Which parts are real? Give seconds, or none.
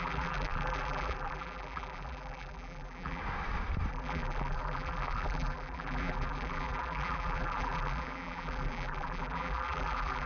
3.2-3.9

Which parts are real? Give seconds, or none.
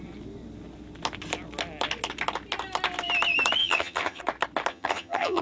0.0-3.6; 4.2-4.7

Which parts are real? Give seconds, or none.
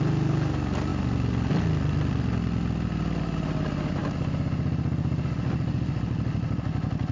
0.0-7.1